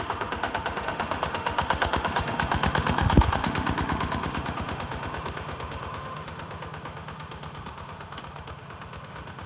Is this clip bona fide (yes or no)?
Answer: no